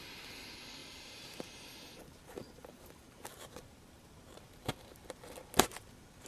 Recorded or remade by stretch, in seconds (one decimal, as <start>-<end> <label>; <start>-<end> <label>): 0.0-0.8 recorded; 0.8-1.6 remade; 1.6-2.4 recorded; 2.4-4.6 remade; 4.6-6.3 recorded